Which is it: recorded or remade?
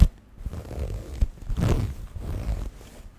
recorded